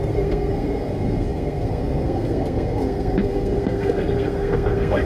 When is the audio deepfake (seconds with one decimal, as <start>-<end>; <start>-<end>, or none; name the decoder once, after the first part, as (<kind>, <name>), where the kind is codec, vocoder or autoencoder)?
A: 0.0-5.1 (codec, SNAC)